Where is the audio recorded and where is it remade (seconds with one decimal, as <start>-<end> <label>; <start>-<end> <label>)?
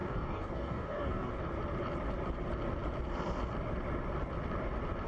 0.0-1.3 remade; 1.3-5.1 recorded